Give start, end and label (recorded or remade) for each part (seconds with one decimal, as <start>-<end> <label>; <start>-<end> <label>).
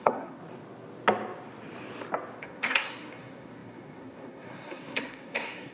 0.0-0.4 remade; 0.4-2.4 recorded; 2.4-5.7 remade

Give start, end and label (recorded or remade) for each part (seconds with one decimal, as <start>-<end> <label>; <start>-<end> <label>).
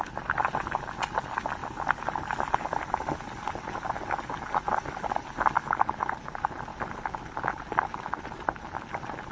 0.0-6.7 recorded; 6.7-8.7 remade; 8.7-9.3 recorded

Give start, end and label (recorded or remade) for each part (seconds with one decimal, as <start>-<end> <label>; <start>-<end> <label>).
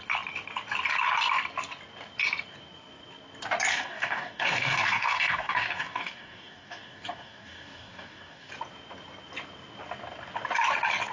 0.0-3.7 recorded; 3.7-8.5 remade; 8.5-11.1 recorded